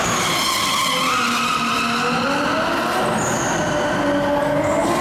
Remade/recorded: recorded